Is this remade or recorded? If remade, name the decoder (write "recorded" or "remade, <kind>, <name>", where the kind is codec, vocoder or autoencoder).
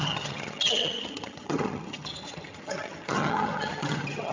remade, vocoder, HiFi-GAN